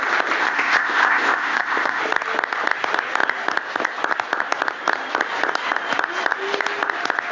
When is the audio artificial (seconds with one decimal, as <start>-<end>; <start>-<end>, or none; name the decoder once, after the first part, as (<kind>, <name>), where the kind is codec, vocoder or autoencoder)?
0.4-2.0 (codec, ZipCodec)